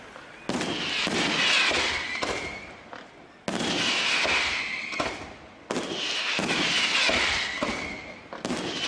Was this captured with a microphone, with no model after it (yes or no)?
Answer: yes